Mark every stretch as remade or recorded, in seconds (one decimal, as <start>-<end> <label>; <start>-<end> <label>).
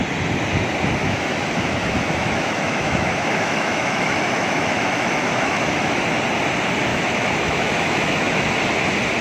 0.0-1.0 recorded; 1.0-6.0 remade; 6.0-6.9 recorded; 6.9-8.5 remade; 8.5-9.2 recorded